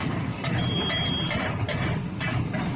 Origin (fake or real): real